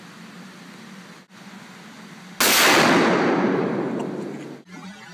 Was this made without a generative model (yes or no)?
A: yes